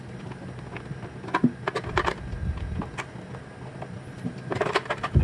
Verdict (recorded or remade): recorded